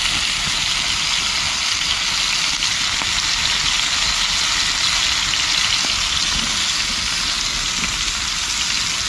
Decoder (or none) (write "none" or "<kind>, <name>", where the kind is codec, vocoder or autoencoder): none